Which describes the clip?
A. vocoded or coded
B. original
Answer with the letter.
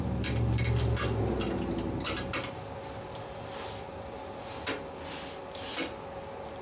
B